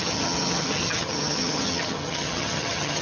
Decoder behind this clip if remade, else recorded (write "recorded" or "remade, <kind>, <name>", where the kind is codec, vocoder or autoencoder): remade, vocoder, HiFi-GAN